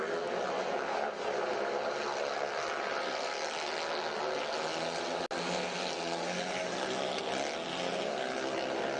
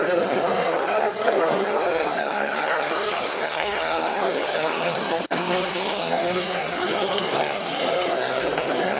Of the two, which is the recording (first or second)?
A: first